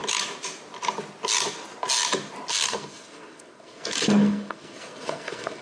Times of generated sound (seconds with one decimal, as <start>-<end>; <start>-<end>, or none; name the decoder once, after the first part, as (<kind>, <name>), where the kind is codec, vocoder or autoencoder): 2.5-5.6 (codec, SNAC)

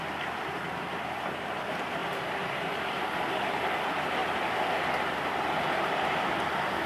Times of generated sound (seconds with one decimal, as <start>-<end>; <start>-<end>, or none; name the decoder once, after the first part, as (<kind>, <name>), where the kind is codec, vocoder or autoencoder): 0.0-4.2 (vocoder, BigVGAN v2); 4.9-6.9

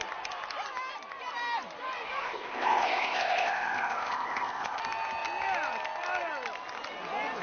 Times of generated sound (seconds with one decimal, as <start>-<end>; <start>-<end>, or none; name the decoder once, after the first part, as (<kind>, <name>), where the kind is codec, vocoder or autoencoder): 2.2-4.8 (codec, ZipCodec)

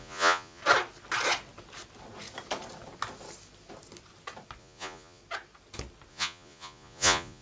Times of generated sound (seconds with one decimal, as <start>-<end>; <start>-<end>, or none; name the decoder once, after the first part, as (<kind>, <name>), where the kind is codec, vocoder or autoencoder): 0.0-0.6 (vocoder, Vocos); 4.6-5.2; 6.1-7.4

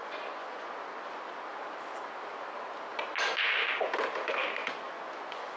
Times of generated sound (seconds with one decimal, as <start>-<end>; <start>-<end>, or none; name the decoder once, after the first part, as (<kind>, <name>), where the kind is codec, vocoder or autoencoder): 0.0-0.7 (vocoder, Vocos); 4.6-5.6